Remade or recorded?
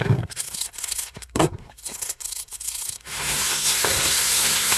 remade